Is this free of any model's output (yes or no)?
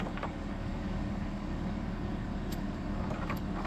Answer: no